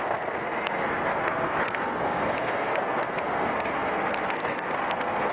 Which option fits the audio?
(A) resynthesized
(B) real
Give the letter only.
A